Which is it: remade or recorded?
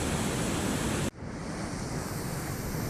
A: recorded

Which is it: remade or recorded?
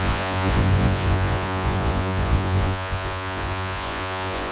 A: remade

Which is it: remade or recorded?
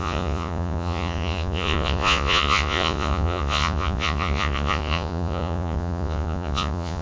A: remade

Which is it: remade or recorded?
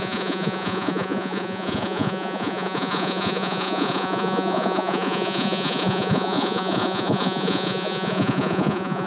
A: remade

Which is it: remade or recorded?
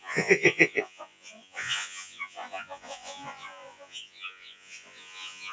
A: remade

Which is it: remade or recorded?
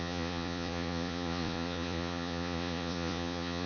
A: remade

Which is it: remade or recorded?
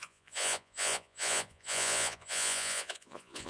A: remade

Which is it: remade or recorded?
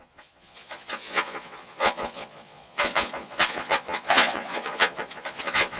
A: remade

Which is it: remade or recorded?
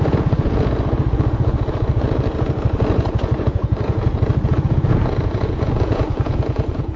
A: remade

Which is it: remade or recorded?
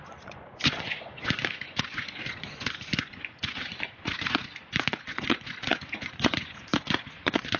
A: remade